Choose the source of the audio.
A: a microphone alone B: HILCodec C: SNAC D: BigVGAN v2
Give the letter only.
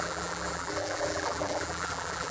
D